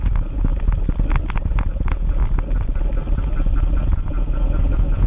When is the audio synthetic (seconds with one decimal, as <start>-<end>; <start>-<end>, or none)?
0.0-0.5; 1.3-2.2; 4.1-5.1